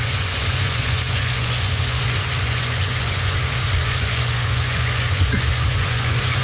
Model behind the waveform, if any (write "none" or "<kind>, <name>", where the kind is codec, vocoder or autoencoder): vocoder, Vocos